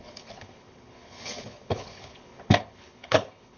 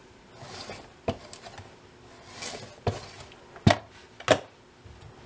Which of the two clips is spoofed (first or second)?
first